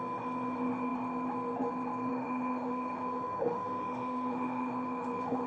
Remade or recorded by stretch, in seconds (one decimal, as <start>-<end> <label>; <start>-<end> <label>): 0.0-2.1 recorded; 2.1-5.5 remade